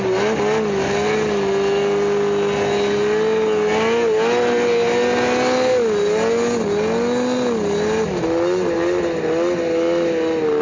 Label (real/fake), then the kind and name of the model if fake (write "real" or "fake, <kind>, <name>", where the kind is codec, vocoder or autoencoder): real